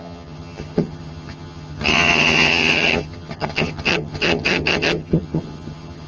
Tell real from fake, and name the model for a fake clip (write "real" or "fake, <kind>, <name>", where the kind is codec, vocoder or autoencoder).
fake, vocoder, HiFi-GAN